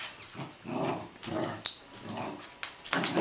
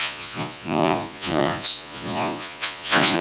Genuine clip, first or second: first